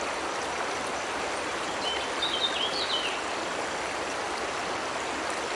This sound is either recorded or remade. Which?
recorded